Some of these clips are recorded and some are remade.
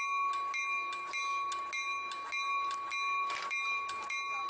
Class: recorded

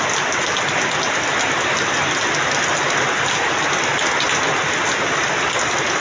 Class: recorded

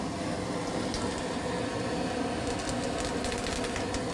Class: recorded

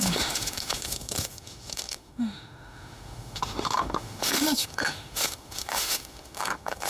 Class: remade